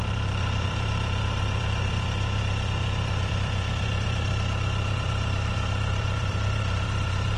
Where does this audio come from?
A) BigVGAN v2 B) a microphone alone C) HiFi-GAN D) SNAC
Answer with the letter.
A